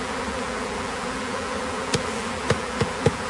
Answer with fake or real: fake